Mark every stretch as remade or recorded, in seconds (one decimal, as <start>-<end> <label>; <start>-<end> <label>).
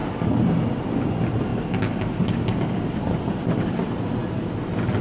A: 0.0-5.0 recorded